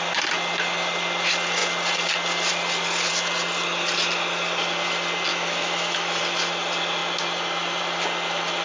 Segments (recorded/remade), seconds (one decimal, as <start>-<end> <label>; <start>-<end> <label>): 0.0-5.3 recorded; 5.3-6.2 remade; 6.2-8.6 recorded